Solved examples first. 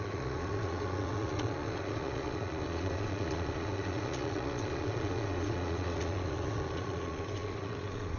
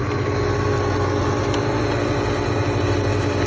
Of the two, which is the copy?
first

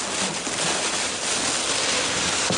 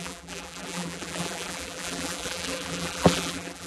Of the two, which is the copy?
second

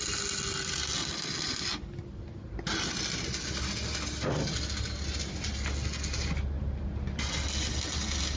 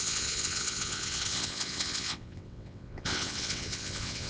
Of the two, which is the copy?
second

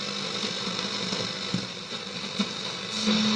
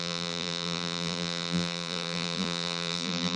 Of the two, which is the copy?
second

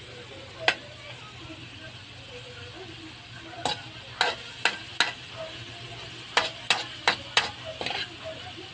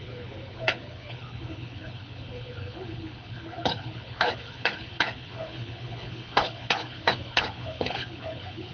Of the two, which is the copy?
second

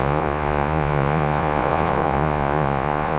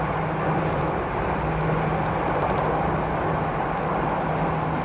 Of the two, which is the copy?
first